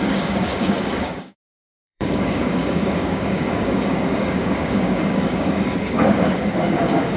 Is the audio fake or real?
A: fake